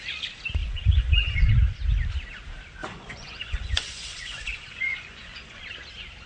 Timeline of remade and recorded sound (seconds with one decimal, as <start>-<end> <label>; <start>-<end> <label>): 0.0-0.6 recorded; 0.6-1.5 remade; 1.5-2.8 recorded; 2.8-5.6 remade; 5.6-6.3 recorded